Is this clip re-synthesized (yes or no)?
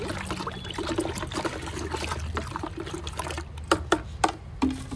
no